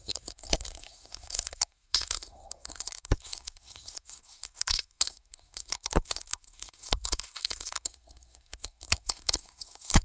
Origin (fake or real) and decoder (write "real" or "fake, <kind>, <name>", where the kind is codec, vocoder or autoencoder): fake, codec, SNAC